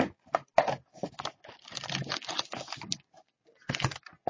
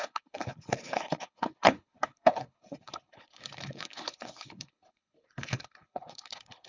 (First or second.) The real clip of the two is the first